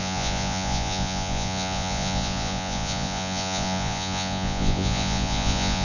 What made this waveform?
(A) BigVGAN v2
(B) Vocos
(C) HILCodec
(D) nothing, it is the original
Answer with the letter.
B